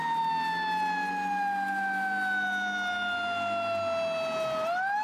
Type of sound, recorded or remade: recorded